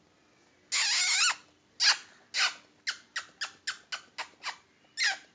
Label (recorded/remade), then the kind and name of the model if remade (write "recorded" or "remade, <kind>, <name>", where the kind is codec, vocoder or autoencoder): recorded